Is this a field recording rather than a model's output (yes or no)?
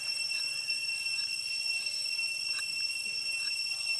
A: yes